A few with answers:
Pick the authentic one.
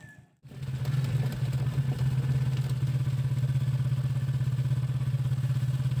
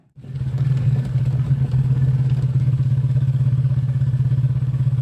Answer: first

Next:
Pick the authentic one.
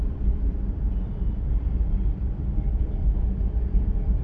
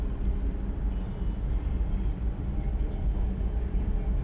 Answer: second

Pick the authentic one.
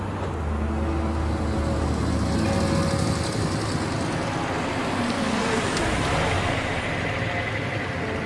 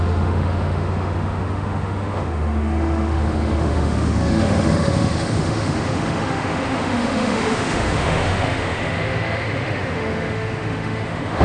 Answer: first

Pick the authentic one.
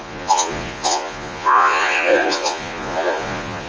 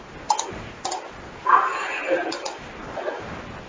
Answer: second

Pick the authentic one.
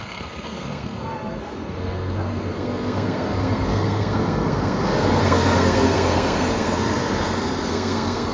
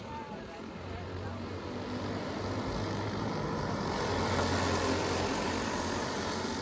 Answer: second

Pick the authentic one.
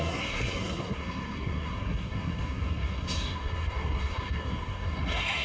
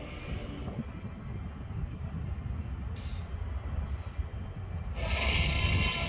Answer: second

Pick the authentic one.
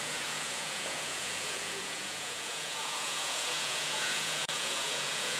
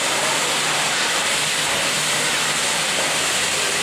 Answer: second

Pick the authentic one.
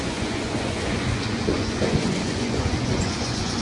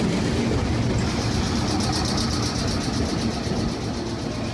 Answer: second